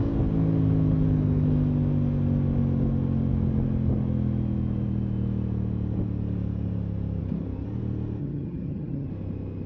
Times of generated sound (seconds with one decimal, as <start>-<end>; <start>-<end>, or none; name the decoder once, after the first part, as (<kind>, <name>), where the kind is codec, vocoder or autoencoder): 8.2-9.1 (vocoder, HiFi-GAN)